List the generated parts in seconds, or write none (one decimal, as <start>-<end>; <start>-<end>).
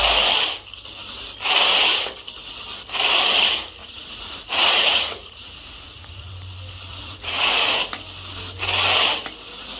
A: 3.8-6.3; 6.9-7.7